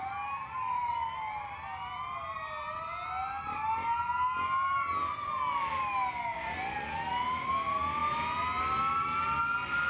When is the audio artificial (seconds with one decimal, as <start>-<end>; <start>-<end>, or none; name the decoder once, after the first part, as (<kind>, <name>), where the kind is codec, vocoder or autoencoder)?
none